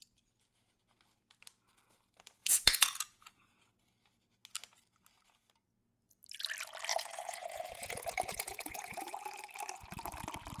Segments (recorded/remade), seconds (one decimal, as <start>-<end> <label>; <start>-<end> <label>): 0.0-2.4 recorded; 2.4-3.7 remade; 3.7-6.9 recorded; 6.9-9.1 remade; 9.1-10.6 recorded